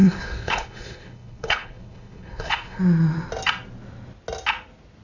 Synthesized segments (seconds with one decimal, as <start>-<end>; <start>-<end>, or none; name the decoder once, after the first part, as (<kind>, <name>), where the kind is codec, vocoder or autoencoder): 0.0-2.8 (codec, HILCodec)